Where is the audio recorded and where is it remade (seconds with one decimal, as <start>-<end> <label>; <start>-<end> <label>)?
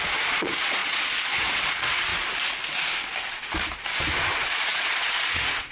0.0-2.1 remade; 2.1-4.1 recorded; 4.1-5.7 remade